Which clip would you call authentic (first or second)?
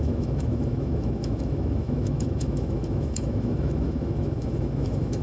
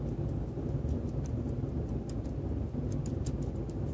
second